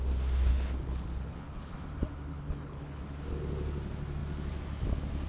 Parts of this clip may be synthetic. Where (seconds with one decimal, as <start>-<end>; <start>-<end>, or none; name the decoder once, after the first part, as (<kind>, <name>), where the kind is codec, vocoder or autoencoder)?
0.5-1.7 (codec, HILCodec); 2.3-3.0